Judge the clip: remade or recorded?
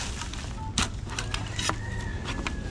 recorded